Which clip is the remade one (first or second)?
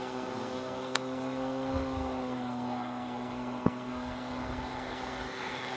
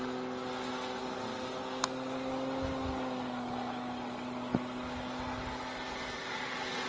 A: first